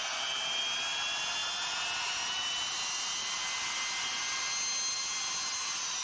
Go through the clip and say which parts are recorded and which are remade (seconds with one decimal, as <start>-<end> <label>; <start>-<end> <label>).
0.0-6.0 recorded